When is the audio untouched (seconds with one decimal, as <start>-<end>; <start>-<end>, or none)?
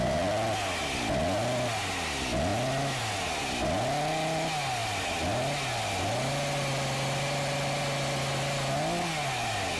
0.0-9.8